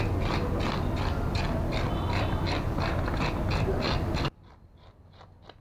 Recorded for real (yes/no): yes